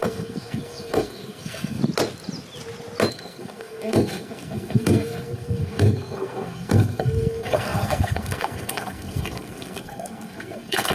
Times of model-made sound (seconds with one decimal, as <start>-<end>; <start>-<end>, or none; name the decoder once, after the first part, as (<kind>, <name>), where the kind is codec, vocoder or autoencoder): 0.0-1.8 (codec, SNAC); 3.1-10.9